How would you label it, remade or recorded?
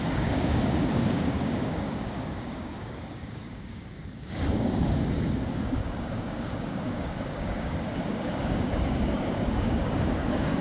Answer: remade